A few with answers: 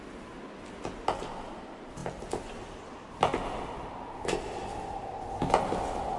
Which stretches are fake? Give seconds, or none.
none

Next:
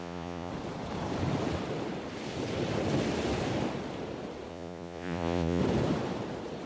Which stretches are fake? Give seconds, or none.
0.0-0.5 (vocoder, Vocos); 4.5-5.6

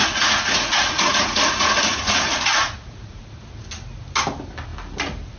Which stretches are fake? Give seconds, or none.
0.0-3.2 (vocoder, Vocos)

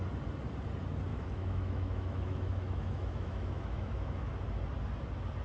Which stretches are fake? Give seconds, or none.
1.1-4.3 (autoencoder, DAC-VAE)

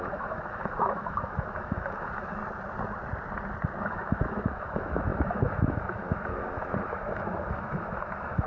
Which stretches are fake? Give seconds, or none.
0.0-2.4 (autoencoder, DAC-VAE); 3.8-8.5